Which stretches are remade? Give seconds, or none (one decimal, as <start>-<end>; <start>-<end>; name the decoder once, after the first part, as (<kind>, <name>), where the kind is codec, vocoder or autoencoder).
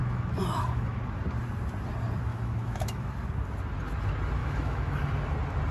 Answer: 0.0-1.0 (autoencoder, DAC-VAE); 2.3-3.1; 4.4-5.0